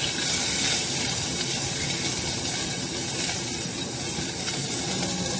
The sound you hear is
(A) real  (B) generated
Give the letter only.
A